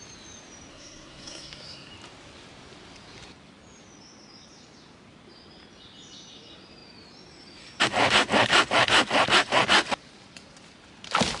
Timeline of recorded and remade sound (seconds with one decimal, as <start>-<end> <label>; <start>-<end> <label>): 0.0-0.7 recorded; 0.7-1.9 remade; 1.9-11.4 recorded